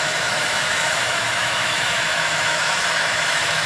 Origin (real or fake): fake